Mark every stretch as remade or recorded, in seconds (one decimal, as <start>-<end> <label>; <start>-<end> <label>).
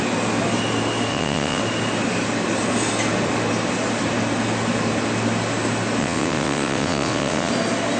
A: 0.0-1.1 recorded; 1.1-1.6 remade; 1.6-6.0 recorded; 6.0-7.5 remade; 7.5-8.0 recorded